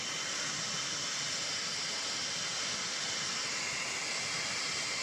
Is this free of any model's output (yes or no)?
yes